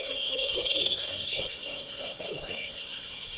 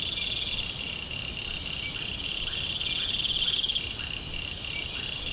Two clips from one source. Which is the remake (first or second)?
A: first